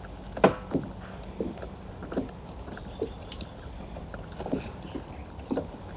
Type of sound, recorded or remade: recorded